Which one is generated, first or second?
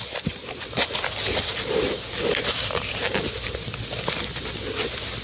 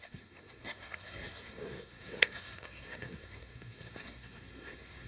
second